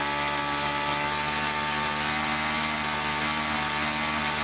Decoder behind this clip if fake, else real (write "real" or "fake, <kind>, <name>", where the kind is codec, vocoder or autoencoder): real